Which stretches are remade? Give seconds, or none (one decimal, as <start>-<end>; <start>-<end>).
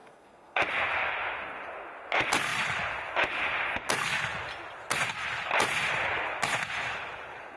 0.0-0.6